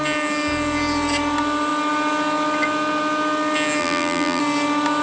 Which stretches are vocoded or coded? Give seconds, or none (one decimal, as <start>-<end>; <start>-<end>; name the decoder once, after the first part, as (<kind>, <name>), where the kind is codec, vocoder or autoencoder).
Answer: 3.8-4.4 (vocoder, BigVGAN v2)